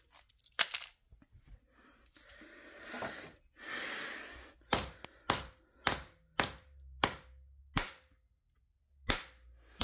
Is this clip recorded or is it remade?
recorded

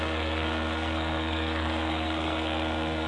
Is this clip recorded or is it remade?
remade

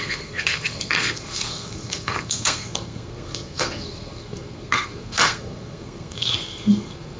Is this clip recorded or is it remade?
remade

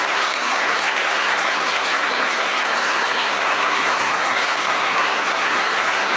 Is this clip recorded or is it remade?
remade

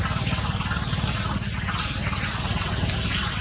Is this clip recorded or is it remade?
recorded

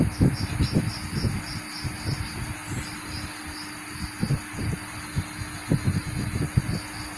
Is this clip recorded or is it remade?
recorded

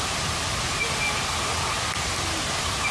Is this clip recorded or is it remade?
recorded